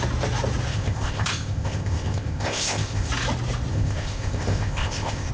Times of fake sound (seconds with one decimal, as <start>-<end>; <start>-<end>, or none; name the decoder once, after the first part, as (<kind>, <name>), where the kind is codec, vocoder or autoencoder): 0.7-3.1 (codec, ZipCodec); 3.7-5.3